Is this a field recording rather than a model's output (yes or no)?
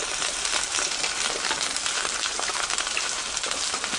no